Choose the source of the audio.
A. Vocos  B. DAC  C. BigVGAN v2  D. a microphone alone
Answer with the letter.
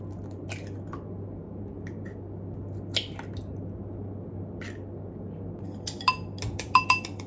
D